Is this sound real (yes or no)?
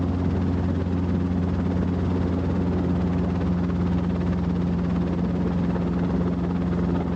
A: yes